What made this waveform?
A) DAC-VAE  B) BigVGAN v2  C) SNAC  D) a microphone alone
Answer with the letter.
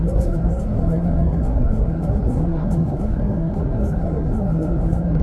C